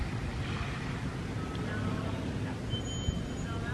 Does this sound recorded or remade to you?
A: recorded